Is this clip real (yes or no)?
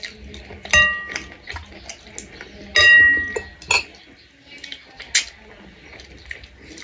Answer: yes